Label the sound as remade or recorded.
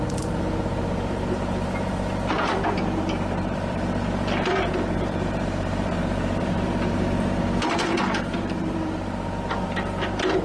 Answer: remade